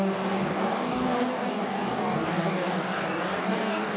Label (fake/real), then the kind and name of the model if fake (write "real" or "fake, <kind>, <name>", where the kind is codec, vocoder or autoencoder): fake, codec, DAC